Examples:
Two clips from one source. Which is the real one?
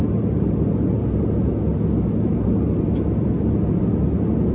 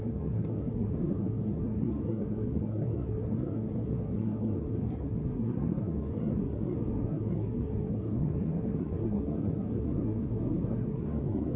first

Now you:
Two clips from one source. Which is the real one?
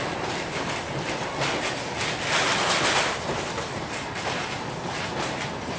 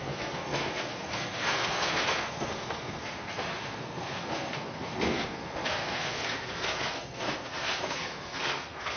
first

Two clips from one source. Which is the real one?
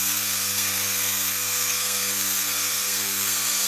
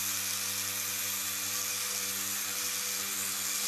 second